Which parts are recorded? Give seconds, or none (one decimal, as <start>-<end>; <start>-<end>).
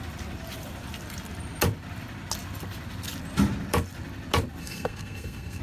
0.0-4.6